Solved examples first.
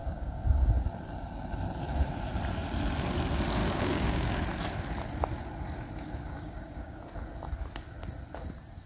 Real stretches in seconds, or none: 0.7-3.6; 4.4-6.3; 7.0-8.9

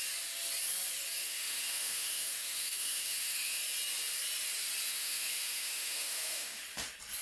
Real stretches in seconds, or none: 0.0-1.2; 3.6-4.9; 6.6-7.2

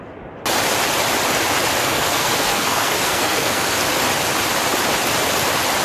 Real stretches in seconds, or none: 0.0-1.8; 3.8-5.8

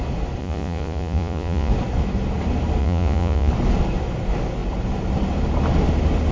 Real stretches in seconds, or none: 0.0-0.4; 1.7-2.8; 3.5-6.3

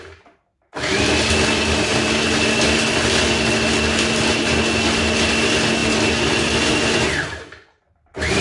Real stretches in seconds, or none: 0.0-8.4

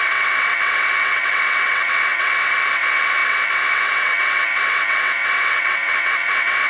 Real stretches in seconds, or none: none

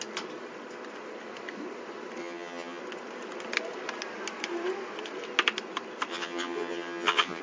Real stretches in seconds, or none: 0.0-2.2; 2.8-6.1

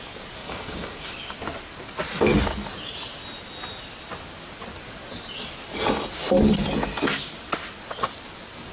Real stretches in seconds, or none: 0.0-0.4; 1.1-8.7